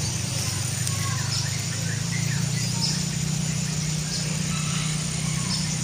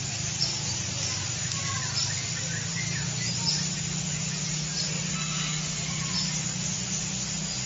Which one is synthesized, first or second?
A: first